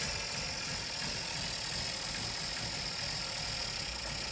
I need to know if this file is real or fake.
real